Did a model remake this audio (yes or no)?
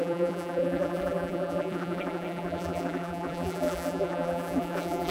yes